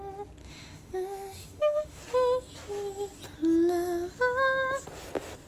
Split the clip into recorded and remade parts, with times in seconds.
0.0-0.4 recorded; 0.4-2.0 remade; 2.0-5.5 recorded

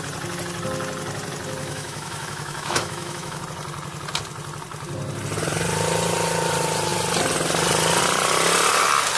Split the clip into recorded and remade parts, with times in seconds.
0.0-1.6 recorded; 1.6-3.4 remade; 3.4-9.2 recorded

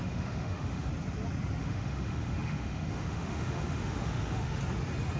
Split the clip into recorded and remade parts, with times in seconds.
0.0-0.9 remade; 0.9-1.6 recorded; 1.6-4.6 remade; 4.6-5.2 recorded

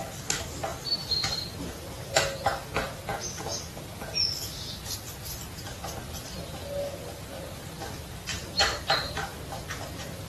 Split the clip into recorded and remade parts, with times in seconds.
0.0-10.3 recorded

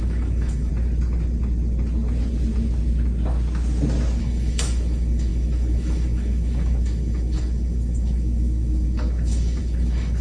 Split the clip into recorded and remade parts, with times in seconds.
0.0-0.7 remade; 0.7-4.2 recorded; 4.2-10.2 remade